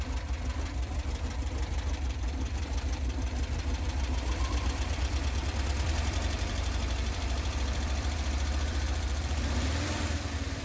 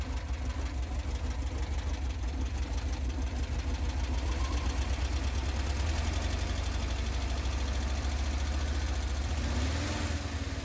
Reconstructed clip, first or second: first